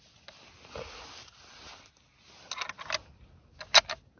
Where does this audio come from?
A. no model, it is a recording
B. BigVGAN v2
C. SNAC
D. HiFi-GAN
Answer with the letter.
A